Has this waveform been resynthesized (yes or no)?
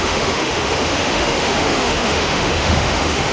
yes